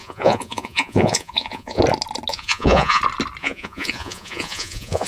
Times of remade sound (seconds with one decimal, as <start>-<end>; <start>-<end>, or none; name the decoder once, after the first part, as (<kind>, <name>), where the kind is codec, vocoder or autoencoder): 0.0-1.8 (vocoder, Vocos); 2.3-3.0; 3.4-5.1